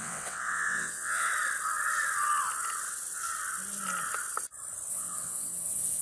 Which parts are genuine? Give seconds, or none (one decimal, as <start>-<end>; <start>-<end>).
1.3-4.9